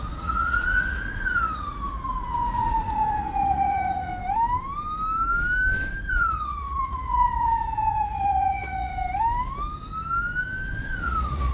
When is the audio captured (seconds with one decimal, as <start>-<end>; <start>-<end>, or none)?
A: 4.1-6.1; 8.9-10.8